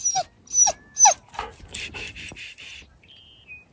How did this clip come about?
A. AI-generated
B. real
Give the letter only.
B